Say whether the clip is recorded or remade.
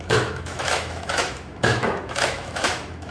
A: remade